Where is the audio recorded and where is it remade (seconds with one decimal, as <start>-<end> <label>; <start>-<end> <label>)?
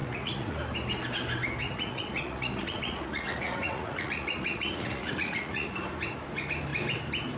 0.0-0.6 remade; 0.6-1.6 recorded; 1.6-5.7 remade; 5.7-7.4 recorded